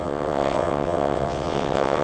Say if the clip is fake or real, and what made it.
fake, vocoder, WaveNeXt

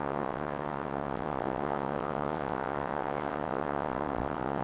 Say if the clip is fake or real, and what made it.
fake, vocoder, WaveNeXt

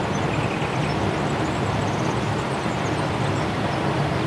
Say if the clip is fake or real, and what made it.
real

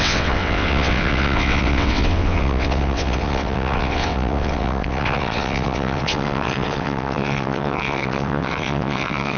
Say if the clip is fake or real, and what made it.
fake, vocoder, WaveNeXt